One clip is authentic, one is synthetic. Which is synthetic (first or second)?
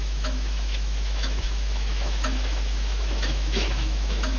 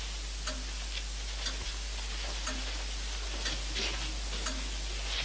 first